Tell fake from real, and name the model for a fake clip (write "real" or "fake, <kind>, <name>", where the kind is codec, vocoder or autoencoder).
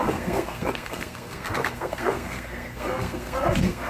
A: fake, codec, SNAC